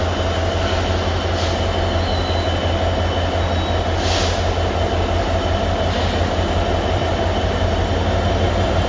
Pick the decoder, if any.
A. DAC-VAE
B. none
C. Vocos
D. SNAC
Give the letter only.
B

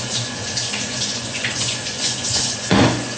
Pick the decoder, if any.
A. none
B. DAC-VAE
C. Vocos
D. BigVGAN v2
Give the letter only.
C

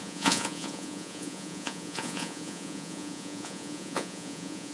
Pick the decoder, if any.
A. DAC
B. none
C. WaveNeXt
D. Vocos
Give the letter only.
D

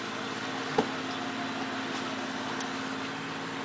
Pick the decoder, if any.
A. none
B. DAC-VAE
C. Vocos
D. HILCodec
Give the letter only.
A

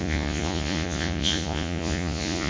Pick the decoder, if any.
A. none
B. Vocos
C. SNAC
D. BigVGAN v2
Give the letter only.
B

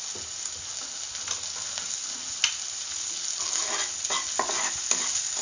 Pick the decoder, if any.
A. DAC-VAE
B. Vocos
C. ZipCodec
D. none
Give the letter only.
D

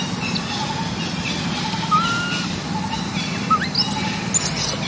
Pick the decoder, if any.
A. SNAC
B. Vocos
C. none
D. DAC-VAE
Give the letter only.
C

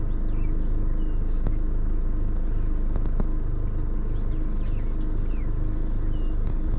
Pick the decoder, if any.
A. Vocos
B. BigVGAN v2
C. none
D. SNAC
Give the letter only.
C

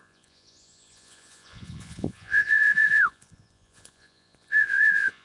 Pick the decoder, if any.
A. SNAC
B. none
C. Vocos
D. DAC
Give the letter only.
C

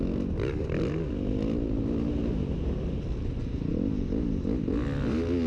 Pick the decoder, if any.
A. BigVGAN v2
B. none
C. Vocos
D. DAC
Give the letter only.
B